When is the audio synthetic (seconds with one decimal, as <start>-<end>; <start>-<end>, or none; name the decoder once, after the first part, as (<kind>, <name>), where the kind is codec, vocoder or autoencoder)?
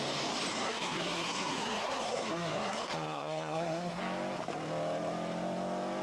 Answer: 0.5-4.0 (codec, SNAC)